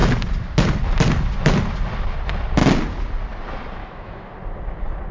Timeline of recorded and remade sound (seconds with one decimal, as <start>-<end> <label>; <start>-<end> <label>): 0.0-3.8 recorded; 3.8-4.3 remade; 4.3-5.1 recorded